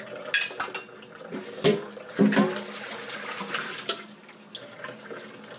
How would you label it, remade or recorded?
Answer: recorded